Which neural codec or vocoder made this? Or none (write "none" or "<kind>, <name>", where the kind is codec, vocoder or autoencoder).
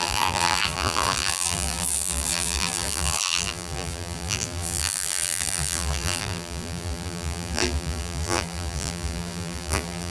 vocoder, BigVGAN v2